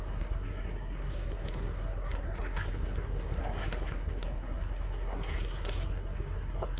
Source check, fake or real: fake